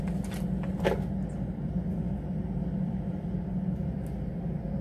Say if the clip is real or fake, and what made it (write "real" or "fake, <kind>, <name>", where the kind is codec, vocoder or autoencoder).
real